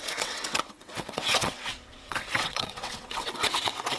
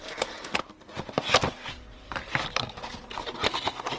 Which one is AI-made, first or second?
first